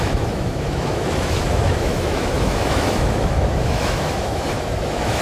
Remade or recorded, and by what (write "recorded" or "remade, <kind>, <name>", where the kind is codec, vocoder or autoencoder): remade, autoencoder, DAC-VAE